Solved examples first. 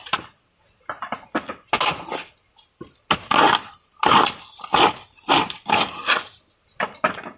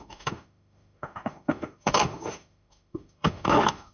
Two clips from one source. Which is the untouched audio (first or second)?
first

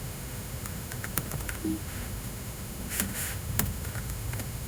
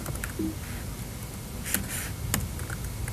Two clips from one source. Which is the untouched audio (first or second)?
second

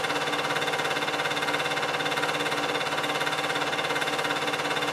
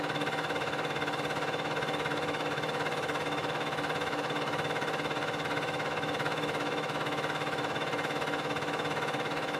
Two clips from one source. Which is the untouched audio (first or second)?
first